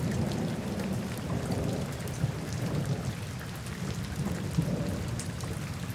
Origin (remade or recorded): remade